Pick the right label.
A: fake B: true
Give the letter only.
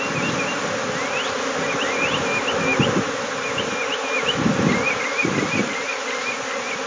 B